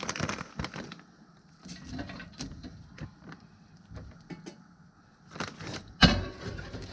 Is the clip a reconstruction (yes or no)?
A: no